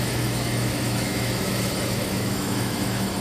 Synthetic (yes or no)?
yes